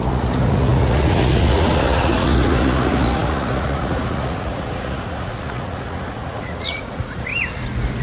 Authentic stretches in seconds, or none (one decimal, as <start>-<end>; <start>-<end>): 7.3-8.0